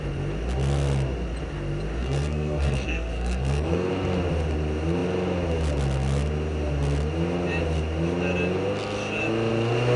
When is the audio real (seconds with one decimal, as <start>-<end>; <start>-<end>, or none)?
0.0-2.0; 3.9-10.0